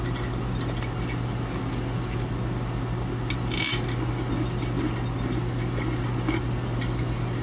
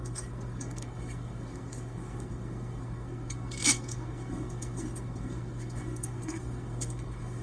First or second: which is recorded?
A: first